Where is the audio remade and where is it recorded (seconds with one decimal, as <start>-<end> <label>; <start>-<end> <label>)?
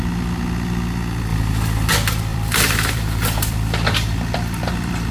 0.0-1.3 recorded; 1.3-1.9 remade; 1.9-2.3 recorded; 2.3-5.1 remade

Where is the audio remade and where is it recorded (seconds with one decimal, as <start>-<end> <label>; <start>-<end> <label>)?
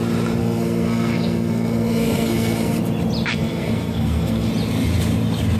0.0-0.4 recorded; 0.4-2.8 remade; 2.8-3.3 recorded; 3.3-4.5 remade; 4.5-5.6 recorded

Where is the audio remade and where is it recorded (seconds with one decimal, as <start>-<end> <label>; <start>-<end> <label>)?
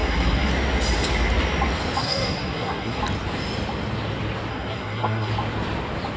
0.0-0.5 remade; 0.5-2.0 recorded; 2.0-3.0 remade; 3.0-4.5 recorded; 4.5-5.3 remade; 5.3-6.2 recorded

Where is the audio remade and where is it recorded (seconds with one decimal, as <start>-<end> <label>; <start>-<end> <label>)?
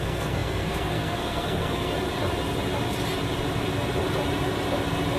0.0-1.9 remade; 1.9-5.2 recorded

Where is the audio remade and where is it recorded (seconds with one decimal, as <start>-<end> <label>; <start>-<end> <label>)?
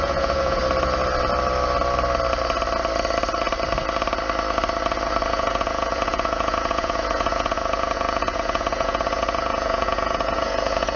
0.0-0.6 remade; 0.6-5.3 recorded; 5.3-11.0 remade